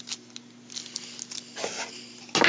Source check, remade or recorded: recorded